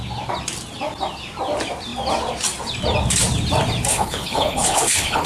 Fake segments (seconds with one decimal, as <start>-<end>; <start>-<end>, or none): 3.9-5.3